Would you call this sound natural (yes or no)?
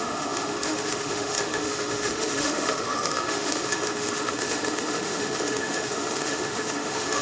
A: no